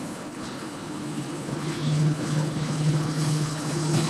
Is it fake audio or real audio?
fake